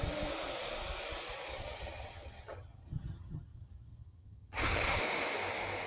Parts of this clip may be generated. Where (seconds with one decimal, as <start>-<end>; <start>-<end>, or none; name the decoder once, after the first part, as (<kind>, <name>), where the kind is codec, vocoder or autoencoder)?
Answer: 1.5-5.0 (vocoder, HiFi-GAN)